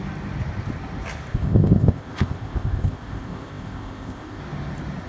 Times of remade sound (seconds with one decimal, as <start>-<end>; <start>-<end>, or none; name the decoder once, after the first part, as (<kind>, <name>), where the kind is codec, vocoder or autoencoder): 1.3-4.4 (codec, ZipCodec)